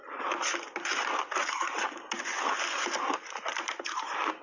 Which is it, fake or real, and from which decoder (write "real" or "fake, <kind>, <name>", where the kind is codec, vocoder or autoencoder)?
real